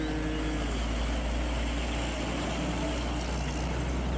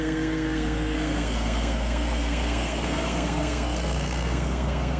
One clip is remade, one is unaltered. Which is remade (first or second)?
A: second